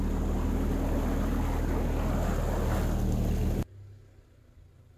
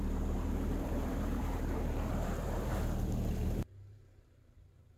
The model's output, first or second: second